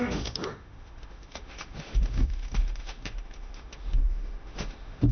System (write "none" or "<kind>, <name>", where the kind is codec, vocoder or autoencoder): autoencoder, DAC-VAE